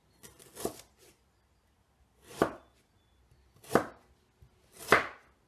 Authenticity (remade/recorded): recorded